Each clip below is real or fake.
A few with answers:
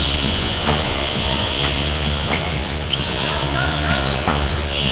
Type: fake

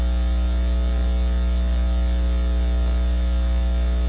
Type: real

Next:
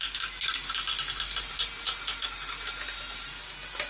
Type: real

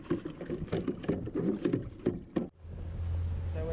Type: real